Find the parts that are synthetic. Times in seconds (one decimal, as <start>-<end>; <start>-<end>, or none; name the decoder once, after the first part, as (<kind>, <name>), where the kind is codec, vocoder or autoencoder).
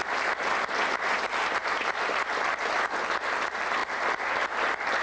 0.0-1.2 (vocoder, BigVGAN v2)